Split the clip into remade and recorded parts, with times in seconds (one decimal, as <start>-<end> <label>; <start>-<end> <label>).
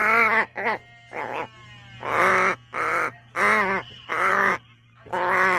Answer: 0.0-4.3 recorded; 4.3-5.1 remade; 5.1-5.6 recorded